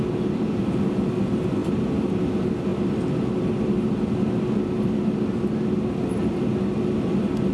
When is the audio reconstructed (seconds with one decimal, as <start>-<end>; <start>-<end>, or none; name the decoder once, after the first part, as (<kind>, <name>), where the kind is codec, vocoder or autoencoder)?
none